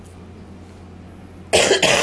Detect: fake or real real